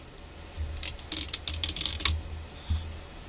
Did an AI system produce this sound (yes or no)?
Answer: no